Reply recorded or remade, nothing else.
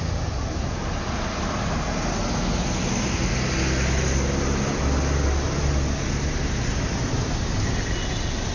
recorded